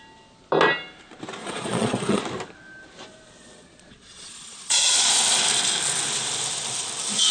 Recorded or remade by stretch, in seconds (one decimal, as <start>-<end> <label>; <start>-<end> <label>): 0.0-1.4 recorded; 1.4-2.2 remade; 2.2-3.4 recorded; 3.4-5.1 remade; 5.1-7.3 recorded